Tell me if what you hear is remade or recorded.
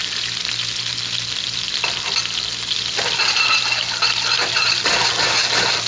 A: recorded